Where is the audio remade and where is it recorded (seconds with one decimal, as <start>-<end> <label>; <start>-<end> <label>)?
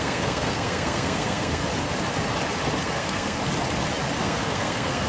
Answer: 0.0-1.6 remade; 1.6-2.8 recorded; 2.8-3.4 remade; 3.4-4.2 recorded; 4.2-5.1 remade